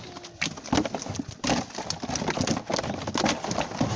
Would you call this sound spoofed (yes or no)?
no